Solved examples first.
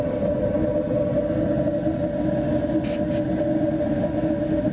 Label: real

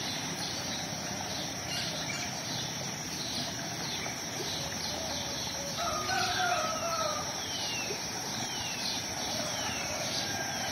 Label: fake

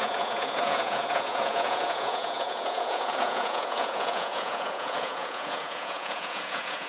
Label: fake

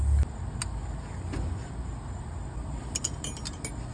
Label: real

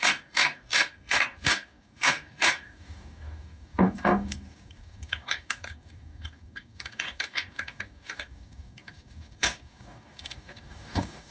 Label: fake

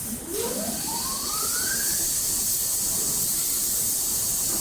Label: real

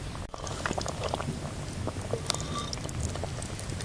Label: real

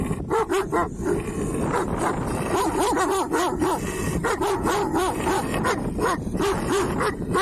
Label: real